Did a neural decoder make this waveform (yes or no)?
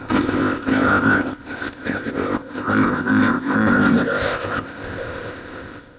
yes